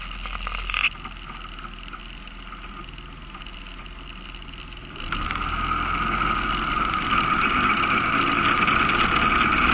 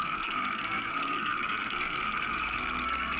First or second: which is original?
first